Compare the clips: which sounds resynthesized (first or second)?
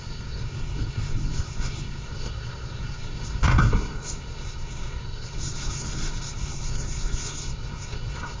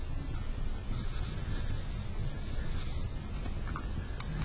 first